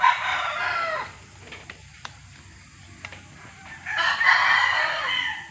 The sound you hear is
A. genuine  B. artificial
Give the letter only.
A